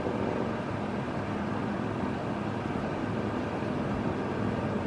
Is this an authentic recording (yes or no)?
no